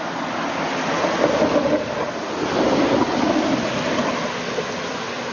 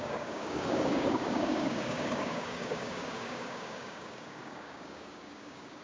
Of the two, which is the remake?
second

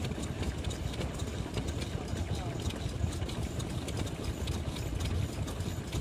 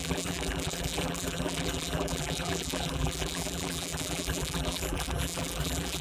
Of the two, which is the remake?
second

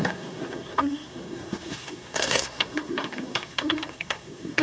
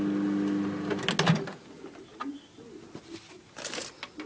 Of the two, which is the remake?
first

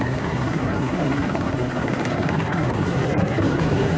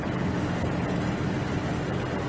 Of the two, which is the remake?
first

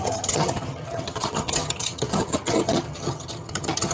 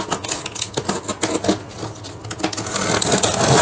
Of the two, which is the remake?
first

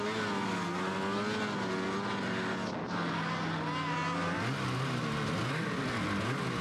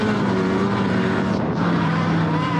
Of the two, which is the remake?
second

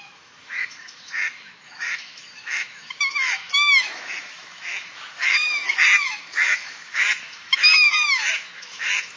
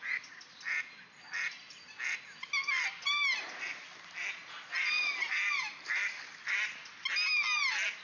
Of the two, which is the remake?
first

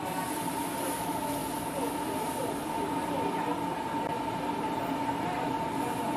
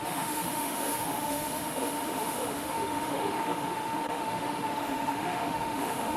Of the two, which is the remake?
second